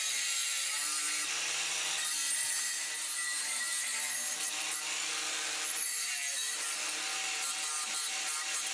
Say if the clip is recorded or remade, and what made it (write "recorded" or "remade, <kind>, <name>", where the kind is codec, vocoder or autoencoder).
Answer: remade, vocoder, BigVGAN v2